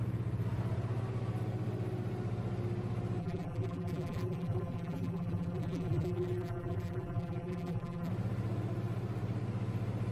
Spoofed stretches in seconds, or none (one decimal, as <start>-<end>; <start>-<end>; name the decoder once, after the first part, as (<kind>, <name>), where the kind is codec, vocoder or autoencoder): 3.2-8.1 (vocoder, BigVGAN v2)